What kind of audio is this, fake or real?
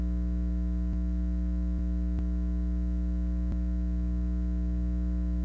real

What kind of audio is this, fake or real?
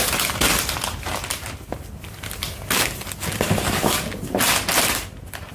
real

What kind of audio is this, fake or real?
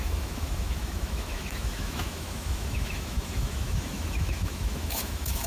fake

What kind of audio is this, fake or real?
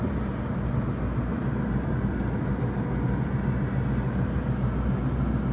real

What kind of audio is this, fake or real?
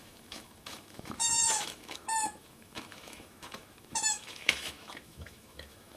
fake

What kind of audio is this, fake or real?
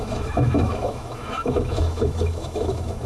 fake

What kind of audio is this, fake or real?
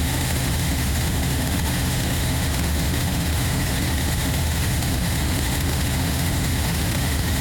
fake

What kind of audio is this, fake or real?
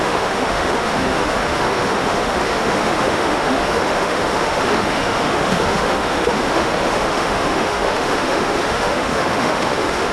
fake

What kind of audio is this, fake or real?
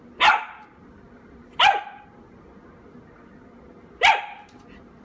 real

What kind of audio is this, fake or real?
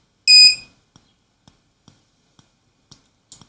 real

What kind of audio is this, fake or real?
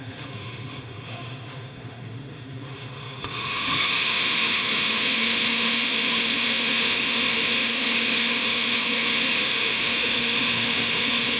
fake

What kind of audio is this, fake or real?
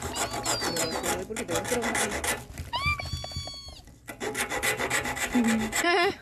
real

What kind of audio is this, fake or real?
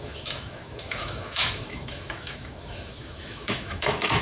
fake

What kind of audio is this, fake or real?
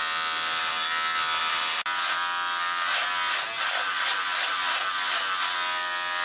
real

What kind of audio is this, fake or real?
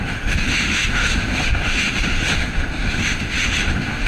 fake